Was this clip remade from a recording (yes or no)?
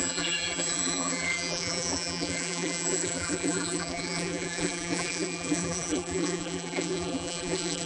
yes